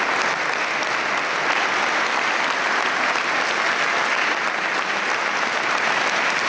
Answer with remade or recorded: recorded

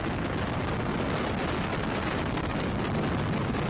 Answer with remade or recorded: recorded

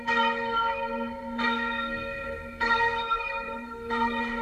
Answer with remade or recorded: remade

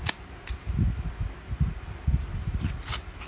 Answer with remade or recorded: recorded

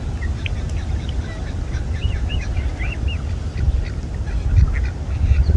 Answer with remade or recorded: recorded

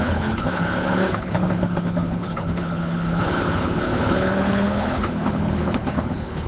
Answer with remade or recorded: remade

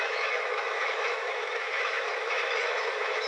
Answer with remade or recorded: remade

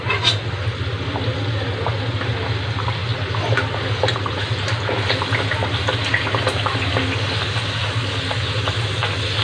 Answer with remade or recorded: recorded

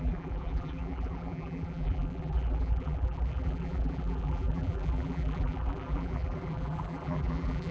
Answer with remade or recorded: remade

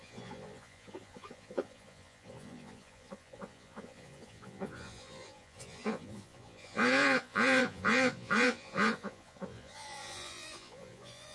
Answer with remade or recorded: remade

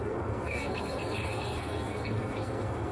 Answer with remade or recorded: remade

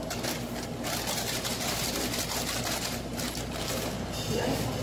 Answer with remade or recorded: recorded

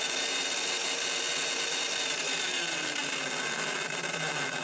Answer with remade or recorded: recorded